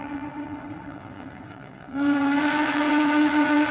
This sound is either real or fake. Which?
fake